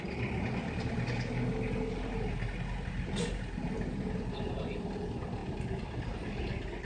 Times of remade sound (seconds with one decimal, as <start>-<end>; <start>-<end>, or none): none